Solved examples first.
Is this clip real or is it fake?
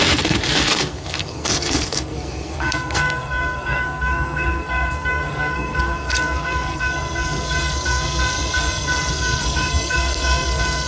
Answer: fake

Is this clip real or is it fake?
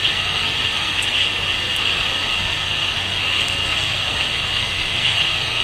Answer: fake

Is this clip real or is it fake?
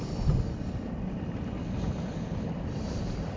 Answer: real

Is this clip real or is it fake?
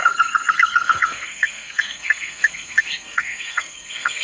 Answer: fake